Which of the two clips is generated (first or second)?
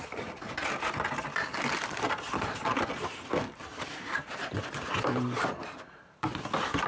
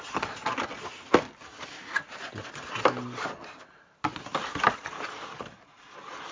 first